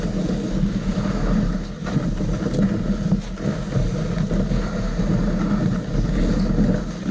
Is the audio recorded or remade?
recorded